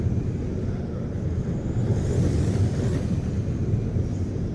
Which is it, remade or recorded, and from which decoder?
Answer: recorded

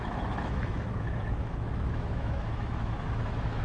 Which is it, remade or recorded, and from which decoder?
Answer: remade, autoencoder, DAC-VAE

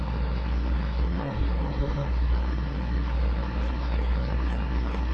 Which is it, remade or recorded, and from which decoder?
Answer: remade, codec, SNAC